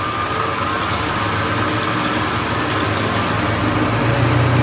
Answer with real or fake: real